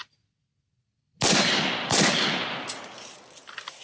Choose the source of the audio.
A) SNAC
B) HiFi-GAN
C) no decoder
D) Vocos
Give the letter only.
C